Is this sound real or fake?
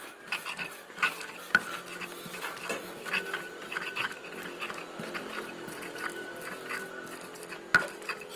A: real